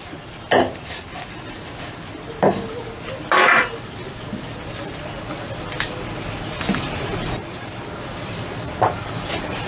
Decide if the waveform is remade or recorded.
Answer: recorded